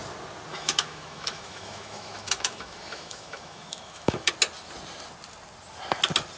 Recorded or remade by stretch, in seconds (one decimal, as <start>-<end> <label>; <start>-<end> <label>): 0.0-0.5 recorded; 0.5-4.3 remade; 4.3-6.4 recorded